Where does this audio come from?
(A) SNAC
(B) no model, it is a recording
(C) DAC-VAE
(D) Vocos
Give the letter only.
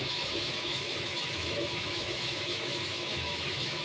C